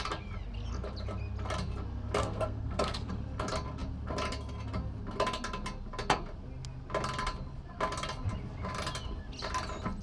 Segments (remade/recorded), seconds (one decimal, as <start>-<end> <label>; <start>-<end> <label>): 0.0-2.2 recorded; 2.2-3.1 remade; 3.1-10.0 recorded